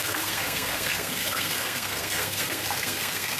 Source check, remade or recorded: remade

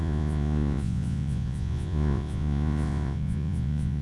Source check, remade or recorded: remade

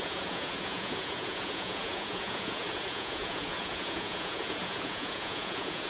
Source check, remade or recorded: remade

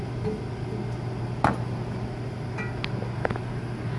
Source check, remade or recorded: recorded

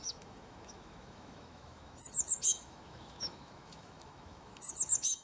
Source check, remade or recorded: remade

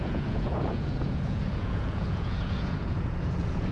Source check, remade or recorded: remade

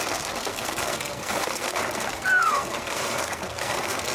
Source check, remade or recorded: remade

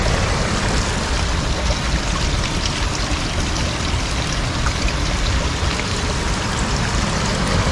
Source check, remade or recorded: recorded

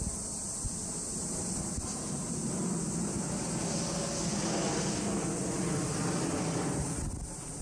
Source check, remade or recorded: recorded